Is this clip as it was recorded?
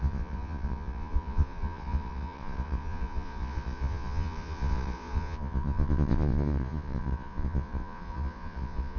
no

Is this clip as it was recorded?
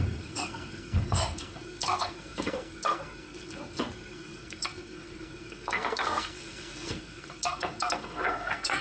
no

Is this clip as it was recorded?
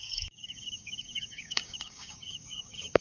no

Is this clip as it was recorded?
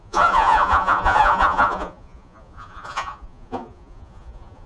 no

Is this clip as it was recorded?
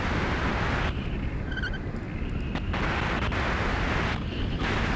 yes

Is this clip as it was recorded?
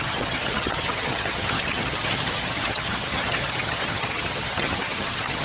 no